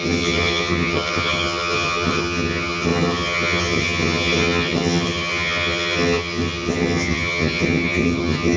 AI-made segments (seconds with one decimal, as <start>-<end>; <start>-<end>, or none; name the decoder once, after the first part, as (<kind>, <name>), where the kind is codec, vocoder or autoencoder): 0.0-8.6 (vocoder, HiFi-GAN)